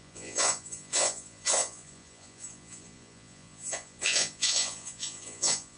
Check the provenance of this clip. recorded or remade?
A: remade